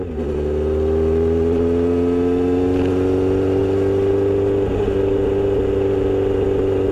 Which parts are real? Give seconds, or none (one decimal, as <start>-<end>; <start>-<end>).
0.0-6.9